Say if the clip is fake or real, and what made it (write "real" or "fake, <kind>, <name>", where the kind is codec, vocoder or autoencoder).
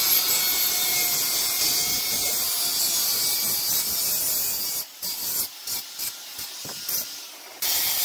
real